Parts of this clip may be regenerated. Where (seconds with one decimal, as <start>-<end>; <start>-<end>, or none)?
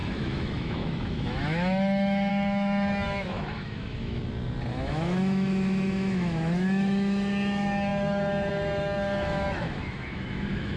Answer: 0.0-4.2; 4.7-10.8